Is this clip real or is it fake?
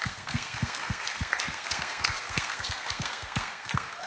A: fake